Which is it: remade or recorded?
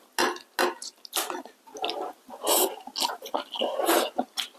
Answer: recorded